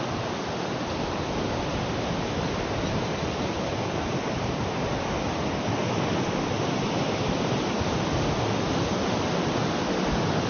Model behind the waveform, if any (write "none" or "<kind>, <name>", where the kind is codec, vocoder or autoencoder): none